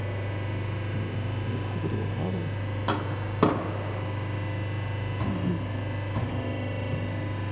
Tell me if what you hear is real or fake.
real